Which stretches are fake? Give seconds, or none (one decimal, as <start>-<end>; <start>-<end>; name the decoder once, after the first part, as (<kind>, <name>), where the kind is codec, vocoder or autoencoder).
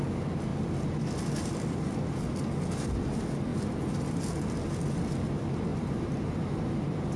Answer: 5.7-7.2 (vocoder, BigVGAN v2)